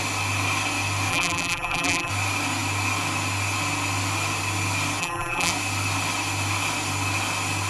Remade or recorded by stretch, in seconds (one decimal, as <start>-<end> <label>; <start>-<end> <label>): 0.0-1.1 recorded; 1.1-2.1 remade; 2.1-5.0 recorded; 5.0-5.5 remade; 5.5-7.7 recorded